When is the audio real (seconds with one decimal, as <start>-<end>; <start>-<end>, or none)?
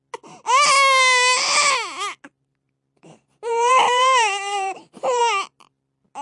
0.0-2.5; 5.2-6.2